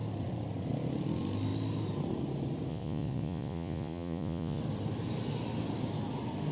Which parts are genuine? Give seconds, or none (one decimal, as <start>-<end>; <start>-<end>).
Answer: 0.0-2.7; 4.6-6.5